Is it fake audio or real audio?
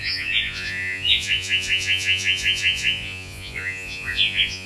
fake